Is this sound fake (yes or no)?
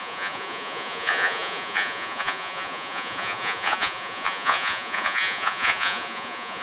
yes